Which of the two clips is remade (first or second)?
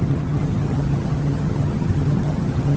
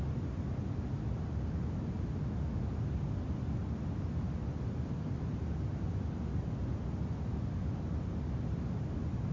first